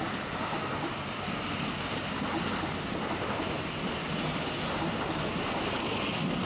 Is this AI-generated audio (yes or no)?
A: no